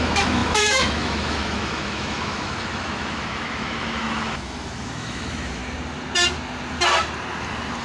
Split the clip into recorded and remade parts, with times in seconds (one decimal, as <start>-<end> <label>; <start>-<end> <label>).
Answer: 0.0-5.6 remade; 5.6-7.8 recorded